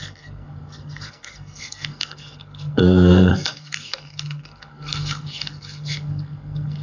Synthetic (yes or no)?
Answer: yes